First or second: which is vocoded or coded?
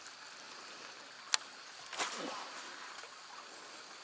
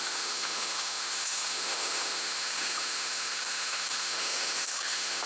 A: second